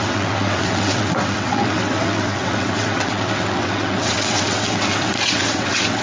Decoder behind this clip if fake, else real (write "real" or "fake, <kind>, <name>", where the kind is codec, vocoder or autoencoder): fake, vocoder, WaveNeXt